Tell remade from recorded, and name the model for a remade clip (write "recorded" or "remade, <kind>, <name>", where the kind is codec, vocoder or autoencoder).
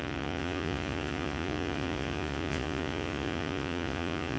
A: remade, vocoder, Vocos